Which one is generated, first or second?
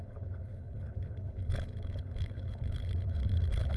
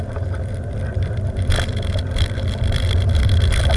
first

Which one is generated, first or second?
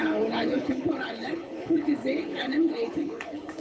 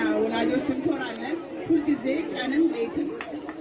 first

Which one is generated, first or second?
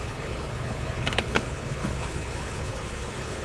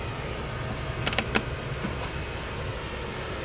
first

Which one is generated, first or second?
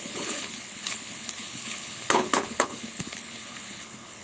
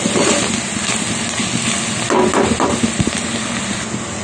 first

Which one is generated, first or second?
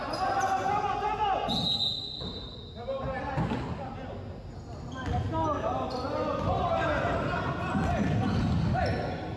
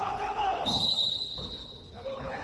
second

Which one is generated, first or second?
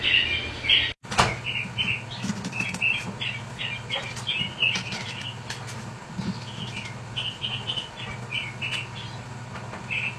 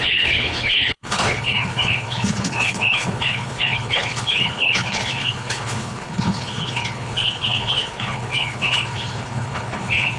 second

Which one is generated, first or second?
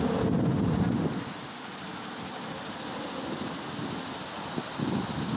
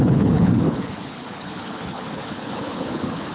second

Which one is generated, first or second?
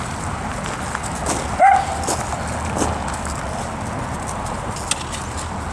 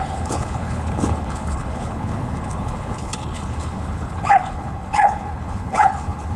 second